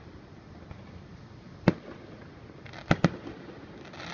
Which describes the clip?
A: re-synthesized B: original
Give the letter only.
B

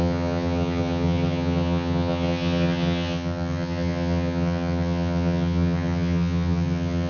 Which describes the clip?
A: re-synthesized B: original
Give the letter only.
A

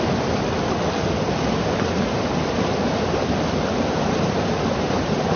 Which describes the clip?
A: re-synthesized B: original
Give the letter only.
B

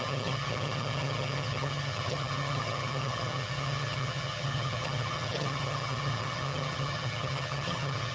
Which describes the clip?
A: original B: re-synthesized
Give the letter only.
B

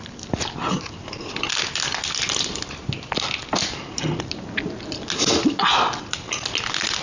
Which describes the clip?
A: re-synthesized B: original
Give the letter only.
B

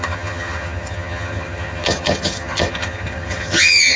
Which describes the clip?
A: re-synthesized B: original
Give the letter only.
A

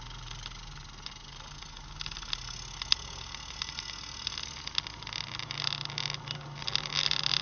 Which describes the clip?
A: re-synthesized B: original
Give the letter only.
B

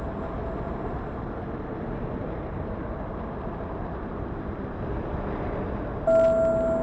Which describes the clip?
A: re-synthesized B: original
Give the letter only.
B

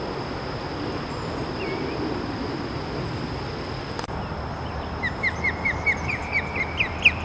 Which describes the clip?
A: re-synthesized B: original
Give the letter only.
B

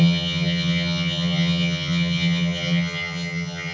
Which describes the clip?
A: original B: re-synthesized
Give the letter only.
B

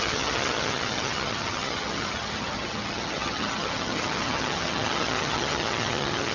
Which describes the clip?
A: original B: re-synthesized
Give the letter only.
B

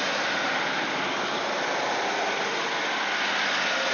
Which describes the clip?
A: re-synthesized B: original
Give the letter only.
B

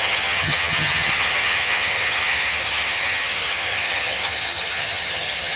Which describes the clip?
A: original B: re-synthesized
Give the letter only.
B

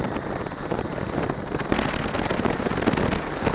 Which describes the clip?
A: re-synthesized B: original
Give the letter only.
B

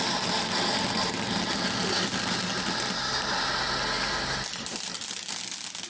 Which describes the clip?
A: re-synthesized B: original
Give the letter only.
B